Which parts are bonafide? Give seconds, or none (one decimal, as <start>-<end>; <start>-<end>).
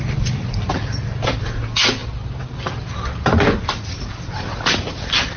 0.0-5.4